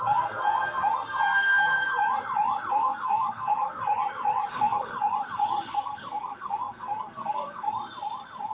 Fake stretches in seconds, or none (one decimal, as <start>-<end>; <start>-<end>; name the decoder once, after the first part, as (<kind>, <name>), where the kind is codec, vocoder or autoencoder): 0.0-1.9 (codec, SNAC); 2.7-3.8; 4.5-4.9; 5.7-7.7